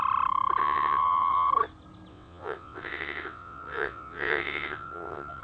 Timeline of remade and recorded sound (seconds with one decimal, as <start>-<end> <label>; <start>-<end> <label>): 0.0-0.6 recorded; 0.6-1.5 remade; 1.5-2.1 recorded; 2.1-5.4 remade